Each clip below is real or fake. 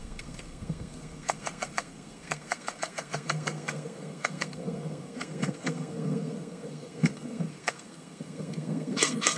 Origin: fake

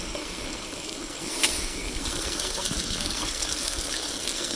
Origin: fake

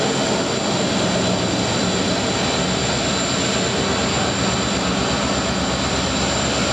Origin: real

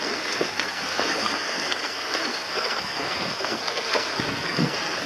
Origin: fake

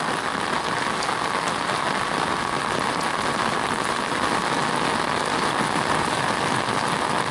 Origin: real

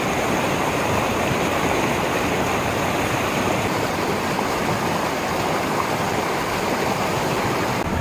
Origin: real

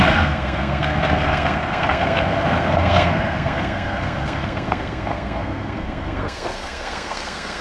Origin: fake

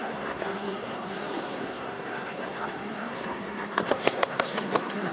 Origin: fake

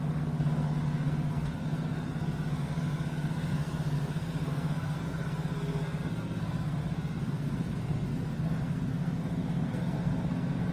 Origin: fake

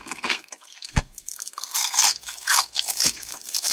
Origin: fake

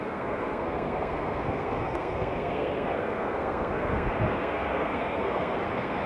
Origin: fake